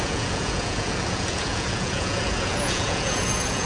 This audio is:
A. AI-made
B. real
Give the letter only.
A